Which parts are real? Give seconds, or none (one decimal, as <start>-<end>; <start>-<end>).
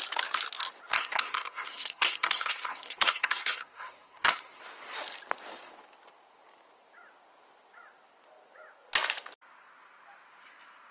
0.0-0.9; 4.6-10.9